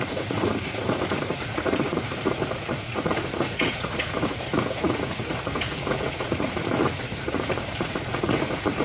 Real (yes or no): no